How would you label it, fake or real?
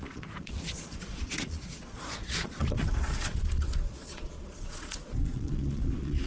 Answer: fake